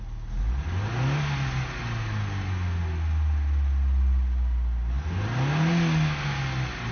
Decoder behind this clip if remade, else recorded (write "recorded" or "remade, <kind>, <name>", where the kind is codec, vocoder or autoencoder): recorded